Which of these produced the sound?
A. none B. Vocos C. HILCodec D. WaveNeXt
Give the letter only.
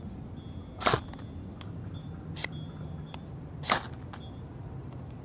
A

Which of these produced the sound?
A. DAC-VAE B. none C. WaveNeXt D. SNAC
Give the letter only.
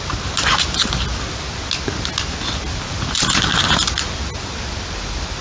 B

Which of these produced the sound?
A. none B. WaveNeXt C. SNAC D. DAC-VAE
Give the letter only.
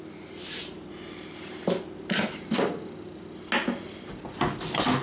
A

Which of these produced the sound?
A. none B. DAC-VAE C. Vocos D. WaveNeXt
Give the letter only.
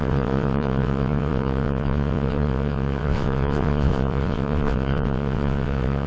D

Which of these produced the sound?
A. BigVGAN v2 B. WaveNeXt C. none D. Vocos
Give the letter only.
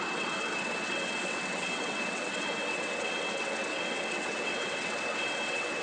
B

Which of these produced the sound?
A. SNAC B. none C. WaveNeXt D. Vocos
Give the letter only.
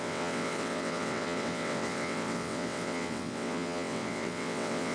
C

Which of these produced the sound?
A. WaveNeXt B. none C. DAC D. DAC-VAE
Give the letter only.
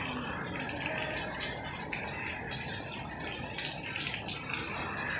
B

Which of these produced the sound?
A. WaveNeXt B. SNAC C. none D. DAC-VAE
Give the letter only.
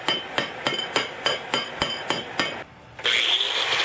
C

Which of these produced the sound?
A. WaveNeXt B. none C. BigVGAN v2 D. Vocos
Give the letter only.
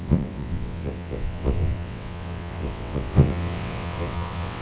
A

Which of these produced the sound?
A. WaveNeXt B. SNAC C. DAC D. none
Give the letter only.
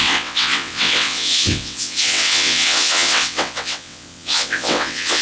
A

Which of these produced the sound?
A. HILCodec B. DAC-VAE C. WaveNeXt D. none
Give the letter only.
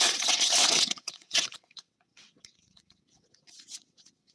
C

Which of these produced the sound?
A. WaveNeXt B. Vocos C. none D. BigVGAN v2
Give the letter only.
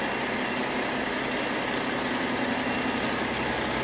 C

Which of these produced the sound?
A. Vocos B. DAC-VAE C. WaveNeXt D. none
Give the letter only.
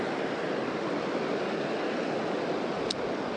D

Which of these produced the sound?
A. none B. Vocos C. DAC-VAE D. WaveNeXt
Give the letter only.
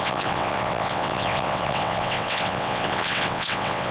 D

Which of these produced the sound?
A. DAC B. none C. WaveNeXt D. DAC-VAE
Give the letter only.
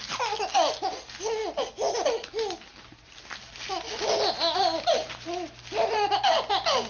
B